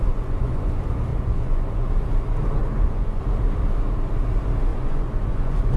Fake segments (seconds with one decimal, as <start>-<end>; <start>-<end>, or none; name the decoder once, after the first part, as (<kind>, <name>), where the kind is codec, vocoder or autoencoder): 0.0-0.7 (vocoder, Vocos); 1.1-1.9; 2.6-3.2; 4.7-5.8